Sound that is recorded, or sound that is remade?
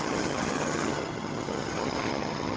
remade